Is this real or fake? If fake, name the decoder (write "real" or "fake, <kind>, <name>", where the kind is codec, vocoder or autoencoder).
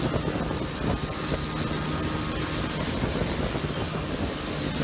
real